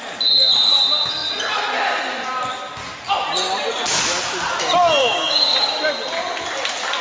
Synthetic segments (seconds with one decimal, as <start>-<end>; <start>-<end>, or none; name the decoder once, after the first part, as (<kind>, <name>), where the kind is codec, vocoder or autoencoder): 5.0-5.8 (codec, DAC)